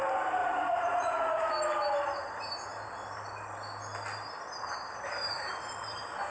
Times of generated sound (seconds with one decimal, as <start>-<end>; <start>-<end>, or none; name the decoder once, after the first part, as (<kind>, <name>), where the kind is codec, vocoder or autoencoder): 0.4-1.5 (vocoder, Vocos)